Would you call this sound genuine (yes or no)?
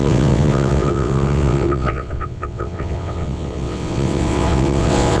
no